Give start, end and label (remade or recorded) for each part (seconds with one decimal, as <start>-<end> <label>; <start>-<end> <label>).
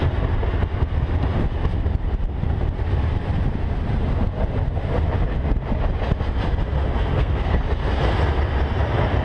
0.0-7.1 recorded; 7.1-7.6 remade; 7.6-9.2 recorded